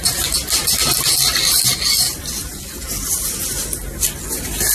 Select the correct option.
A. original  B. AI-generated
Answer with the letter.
A